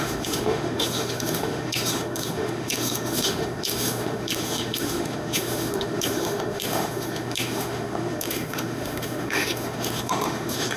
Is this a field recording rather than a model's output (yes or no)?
no